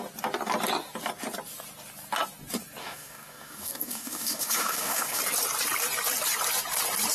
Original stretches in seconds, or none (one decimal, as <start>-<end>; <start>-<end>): 0.0-2.8; 5.2-7.1